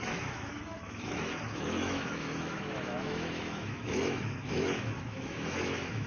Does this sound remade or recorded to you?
remade